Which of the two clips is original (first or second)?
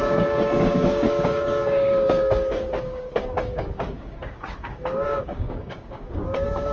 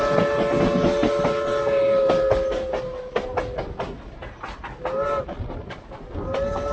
second